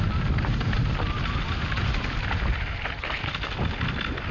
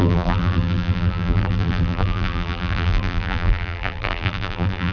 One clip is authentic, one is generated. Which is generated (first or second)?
second